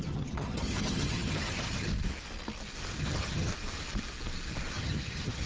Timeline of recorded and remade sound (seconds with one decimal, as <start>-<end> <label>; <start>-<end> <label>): 0.0-1.9 remade; 1.9-3.0 recorded; 3.0-3.5 remade; 3.5-4.7 recorded; 4.7-5.5 remade